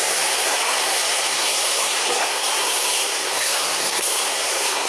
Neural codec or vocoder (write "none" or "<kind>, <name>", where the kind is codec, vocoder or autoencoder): codec, SNAC